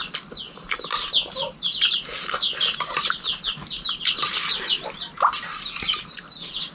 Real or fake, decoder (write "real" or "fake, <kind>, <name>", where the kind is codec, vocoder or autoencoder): real